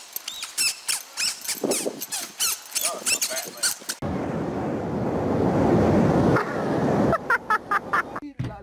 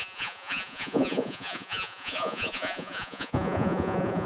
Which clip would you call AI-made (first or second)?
second